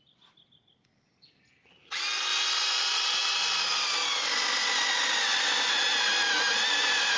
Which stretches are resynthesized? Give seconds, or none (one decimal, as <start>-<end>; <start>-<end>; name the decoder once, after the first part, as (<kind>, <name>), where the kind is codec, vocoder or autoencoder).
none